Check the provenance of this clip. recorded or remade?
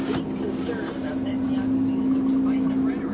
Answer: recorded